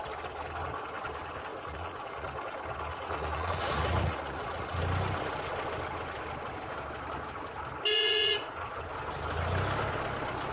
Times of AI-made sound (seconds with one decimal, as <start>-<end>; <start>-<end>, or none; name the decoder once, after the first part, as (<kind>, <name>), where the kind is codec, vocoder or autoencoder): 1.5-2.3 (vocoder, Vocos); 2.9-4.8; 7.9-8.8